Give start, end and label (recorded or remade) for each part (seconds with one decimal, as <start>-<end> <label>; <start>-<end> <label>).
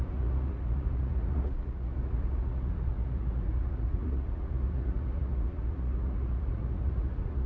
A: 0.0-7.5 remade